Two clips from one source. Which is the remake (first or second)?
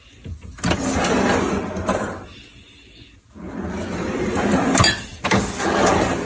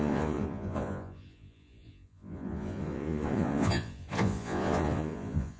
second